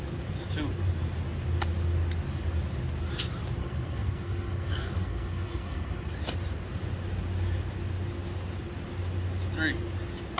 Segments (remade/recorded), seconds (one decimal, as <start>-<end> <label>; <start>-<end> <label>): 0.0-3.6 recorded; 3.6-6.1 remade; 6.1-10.4 recorded